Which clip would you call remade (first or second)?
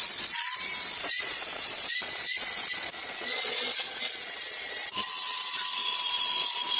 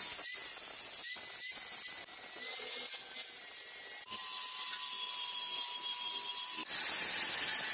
first